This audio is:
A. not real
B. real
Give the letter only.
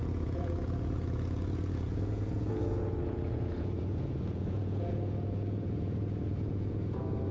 A